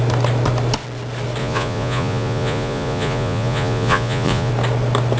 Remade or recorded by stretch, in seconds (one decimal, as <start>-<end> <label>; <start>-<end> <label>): 0.0-1.4 recorded; 1.4-4.5 remade; 4.5-5.2 recorded

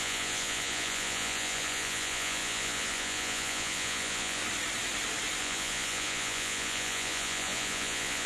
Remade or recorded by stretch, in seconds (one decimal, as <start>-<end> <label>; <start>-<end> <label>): 0.0-4.4 remade; 4.4-5.4 recorded; 5.4-8.3 remade

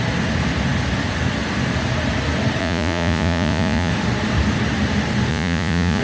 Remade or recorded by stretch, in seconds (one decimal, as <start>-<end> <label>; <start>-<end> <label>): 0.0-2.6 recorded; 2.6-3.9 remade; 3.9-5.3 recorded; 5.3-6.0 remade

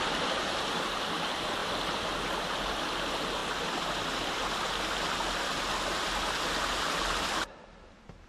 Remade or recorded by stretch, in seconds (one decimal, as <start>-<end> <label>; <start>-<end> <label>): 0.0-8.3 recorded

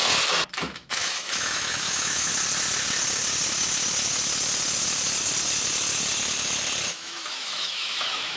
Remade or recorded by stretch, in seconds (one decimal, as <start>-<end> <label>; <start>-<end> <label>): 0.0-0.6 recorded; 0.6-2.3 remade; 2.3-6.9 recorded; 6.9-8.4 remade

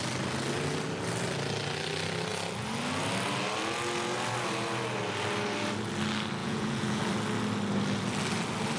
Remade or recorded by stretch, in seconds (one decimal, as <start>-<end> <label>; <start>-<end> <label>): 0.0-6.4 recorded; 6.4-7.0 remade; 7.0-8.8 recorded